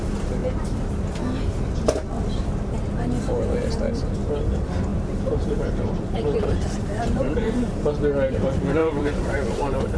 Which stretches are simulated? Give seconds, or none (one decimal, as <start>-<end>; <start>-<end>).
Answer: 0.4-0.9; 4.9-7.5; 8.8-10.0